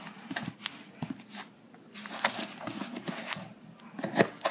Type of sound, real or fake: real